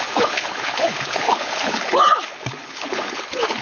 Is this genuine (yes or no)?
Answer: no